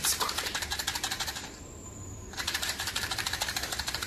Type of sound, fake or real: fake